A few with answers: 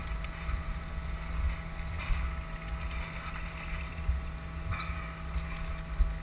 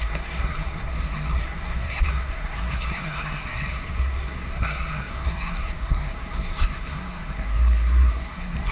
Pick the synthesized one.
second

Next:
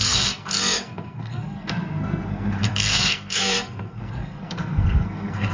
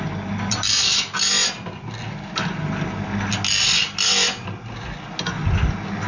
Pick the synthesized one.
first